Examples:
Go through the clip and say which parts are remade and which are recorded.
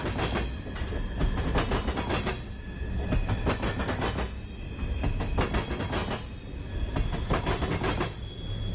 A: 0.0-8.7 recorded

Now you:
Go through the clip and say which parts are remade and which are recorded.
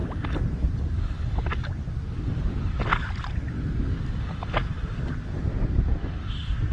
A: 0.0-6.7 recorded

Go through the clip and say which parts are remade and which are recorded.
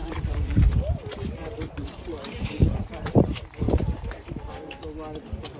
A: 0.0-0.7 remade; 0.7-1.4 recorded; 1.4-4.8 remade; 4.8-5.6 recorded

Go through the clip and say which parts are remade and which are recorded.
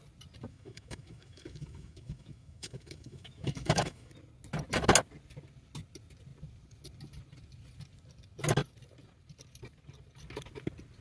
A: 0.0-0.5 recorded; 0.5-4.1 remade; 4.1-11.0 recorded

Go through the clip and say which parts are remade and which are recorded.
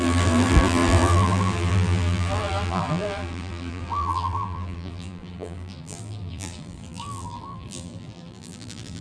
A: 0.0-9.0 remade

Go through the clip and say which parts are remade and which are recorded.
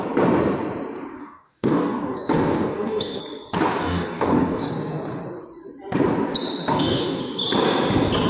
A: 0.0-1.2 recorded; 1.2-3.2 remade; 3.2-3.8 recorded; 3.8-4.7 remade; 4.7-6.7 recorded; 6.7-7.2 remade; 7.2-8.3 recorded